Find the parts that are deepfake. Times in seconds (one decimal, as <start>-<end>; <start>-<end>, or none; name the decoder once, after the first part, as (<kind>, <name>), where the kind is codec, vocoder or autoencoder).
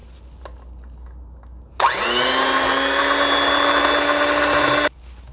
none